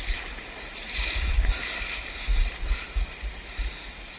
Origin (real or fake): real